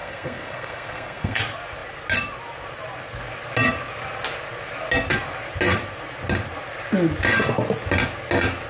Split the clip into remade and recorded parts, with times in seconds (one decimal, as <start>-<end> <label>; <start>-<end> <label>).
0.0-1.4 remade; 1.4-8.7 recorded